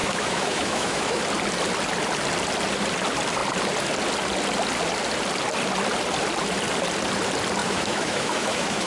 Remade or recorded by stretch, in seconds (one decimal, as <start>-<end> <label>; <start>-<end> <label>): 0.0-1.2 remade; 1.2-7.6 recorded; 7.6-8.9 remade